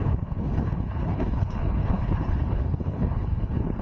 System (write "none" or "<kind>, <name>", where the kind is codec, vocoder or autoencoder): codec, HILCodec